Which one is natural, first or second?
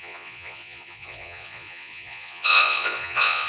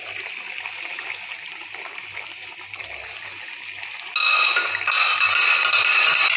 second